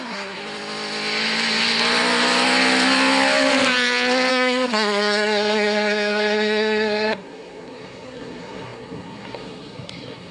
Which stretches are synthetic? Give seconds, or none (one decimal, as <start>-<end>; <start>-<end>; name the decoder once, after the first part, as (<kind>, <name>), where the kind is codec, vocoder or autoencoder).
0.0-0.4 (codec, SNAC); 4.3-10.3